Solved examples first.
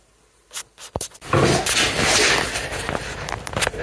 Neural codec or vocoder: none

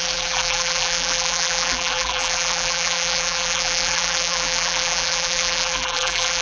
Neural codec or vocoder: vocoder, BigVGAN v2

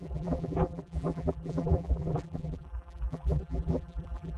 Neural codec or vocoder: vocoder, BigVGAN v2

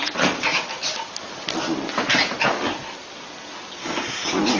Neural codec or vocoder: none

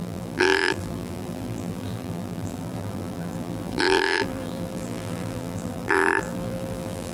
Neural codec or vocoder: vocoder, BigVGAN v2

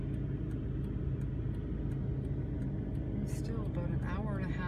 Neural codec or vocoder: none